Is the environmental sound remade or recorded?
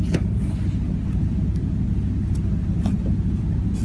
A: recorded